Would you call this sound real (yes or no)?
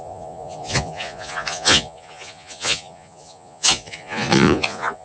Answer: no